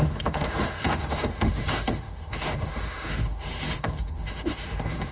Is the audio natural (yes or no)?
no